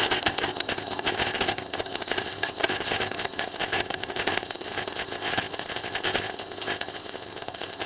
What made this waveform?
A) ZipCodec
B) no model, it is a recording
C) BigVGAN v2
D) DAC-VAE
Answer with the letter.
A